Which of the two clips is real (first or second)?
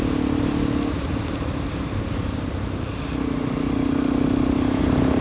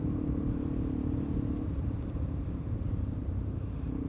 first